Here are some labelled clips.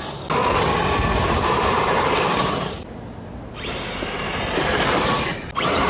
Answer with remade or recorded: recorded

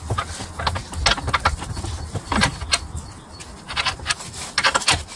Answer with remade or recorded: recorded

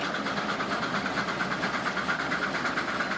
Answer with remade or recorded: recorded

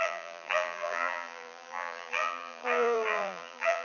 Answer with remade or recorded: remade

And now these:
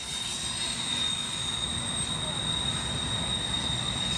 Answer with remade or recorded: recorded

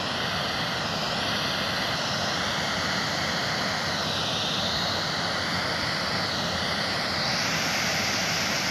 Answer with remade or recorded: recorded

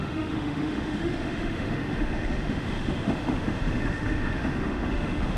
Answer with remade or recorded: remade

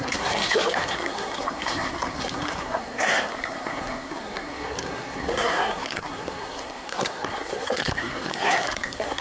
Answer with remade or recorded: remade